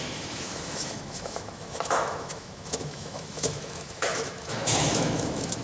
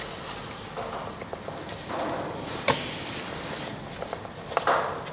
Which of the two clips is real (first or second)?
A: second